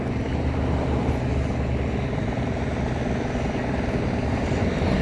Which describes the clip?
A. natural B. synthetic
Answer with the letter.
A